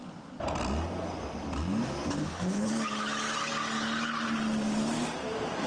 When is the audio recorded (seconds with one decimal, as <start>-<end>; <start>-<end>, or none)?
0.0-2.2; 2.7-5.7